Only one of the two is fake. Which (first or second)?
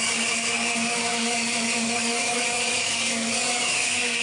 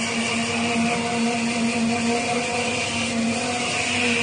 first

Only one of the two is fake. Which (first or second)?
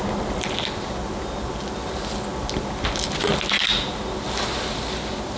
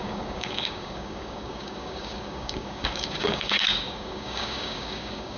second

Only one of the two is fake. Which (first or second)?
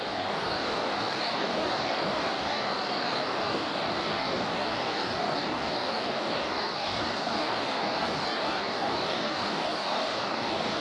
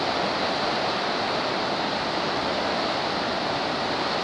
first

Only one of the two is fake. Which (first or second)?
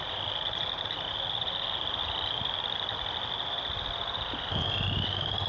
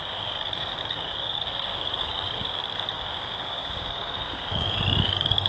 second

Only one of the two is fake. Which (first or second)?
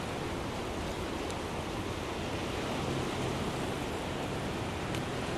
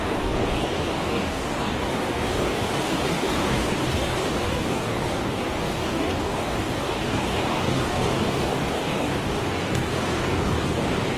second